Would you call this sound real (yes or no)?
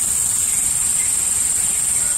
yes